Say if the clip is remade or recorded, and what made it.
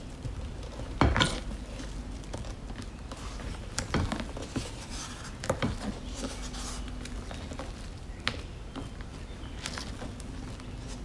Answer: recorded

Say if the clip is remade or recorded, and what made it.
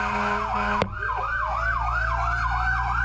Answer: recorded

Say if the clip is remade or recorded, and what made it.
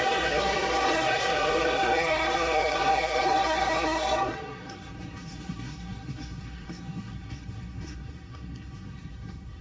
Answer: remade, codec, SNAC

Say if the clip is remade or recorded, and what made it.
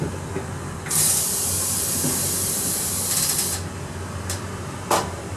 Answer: recorded